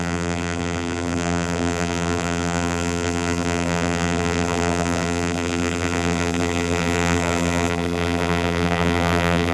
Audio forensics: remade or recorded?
remade